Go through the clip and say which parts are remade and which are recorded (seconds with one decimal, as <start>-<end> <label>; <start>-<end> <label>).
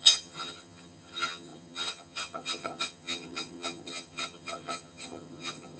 0.0-5.8 remade